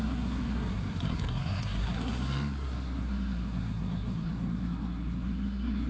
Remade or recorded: remade